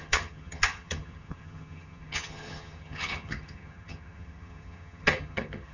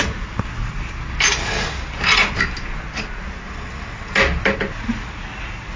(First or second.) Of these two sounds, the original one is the second